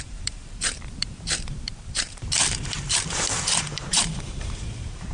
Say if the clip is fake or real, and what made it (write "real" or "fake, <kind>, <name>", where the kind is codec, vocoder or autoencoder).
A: fake, vocoder, BigVGAN v2